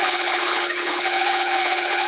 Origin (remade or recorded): remade